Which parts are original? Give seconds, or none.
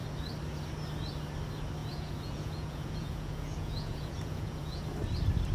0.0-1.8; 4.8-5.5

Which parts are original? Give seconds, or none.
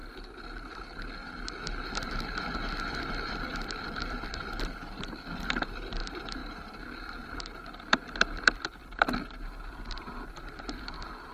0.0-3.1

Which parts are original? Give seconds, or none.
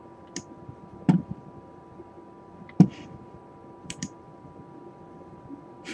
none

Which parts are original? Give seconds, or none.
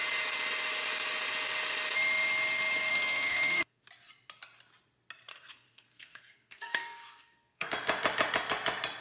0.0-2.9; 3.8-5.3; 7.7-9.0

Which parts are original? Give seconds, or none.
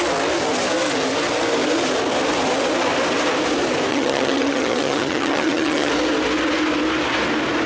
0.0-3.9; 5.9-7.7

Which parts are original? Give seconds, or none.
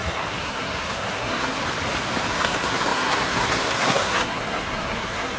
1.6-2.3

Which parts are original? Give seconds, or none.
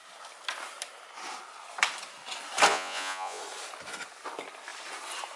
0.0-2.7; 3.4-5.4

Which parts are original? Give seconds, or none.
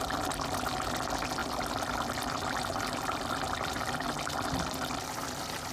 0.0-1.4; 4.1-5.7